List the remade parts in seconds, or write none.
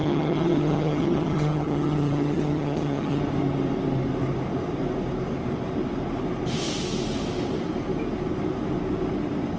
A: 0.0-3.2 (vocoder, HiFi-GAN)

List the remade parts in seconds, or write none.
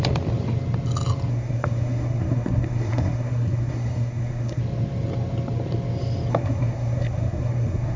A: 1.3-4.6 (codec, SNAC); 6.3-8.0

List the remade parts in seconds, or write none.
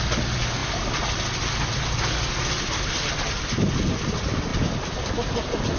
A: none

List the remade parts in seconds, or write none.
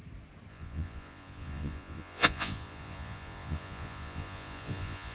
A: 0.5-5.1 (vocoder, Vocos)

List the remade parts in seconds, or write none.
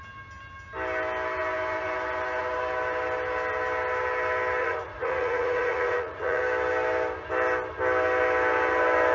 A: 4.6-6.4 (vocoder, Vocos)